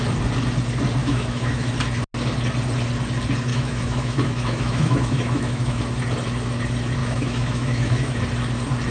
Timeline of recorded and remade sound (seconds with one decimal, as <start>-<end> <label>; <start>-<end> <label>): 0.0-1.0 recorded; 1.0-1.7 remade; 1.7-3.5 recorded; 3.5-5.8 remade; 5.8-7.0 recorded; 7.0-8.2 remade; 8.2-8.9 recorded